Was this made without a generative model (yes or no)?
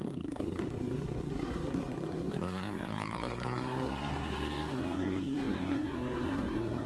no